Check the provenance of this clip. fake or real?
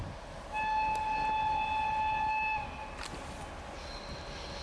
real